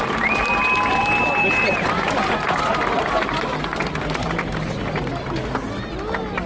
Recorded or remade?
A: recorded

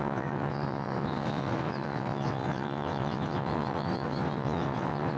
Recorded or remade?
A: remade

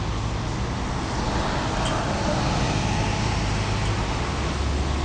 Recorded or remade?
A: recorded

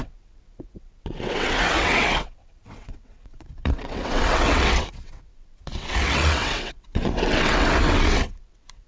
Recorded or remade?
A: remade